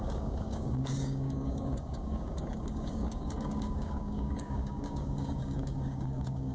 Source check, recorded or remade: remade